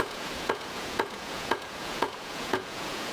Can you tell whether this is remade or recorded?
remade